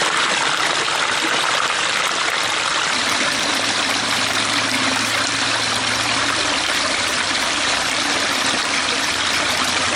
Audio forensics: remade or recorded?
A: remade